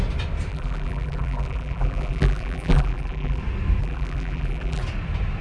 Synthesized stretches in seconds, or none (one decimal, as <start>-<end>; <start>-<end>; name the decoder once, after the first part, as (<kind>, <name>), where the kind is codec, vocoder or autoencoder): 0.5-3.4 (vocoder, BigVGAN v2); 3.8-4.8